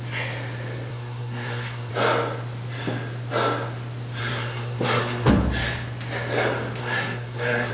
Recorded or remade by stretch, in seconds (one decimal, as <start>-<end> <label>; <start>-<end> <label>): 0.0-0.9 recorded; 0.9-1.9 remade; 1.9-4.2 recorded; 4.2-5.3 remade; 5.3-6.8 recorded; 6.8-7.7 remade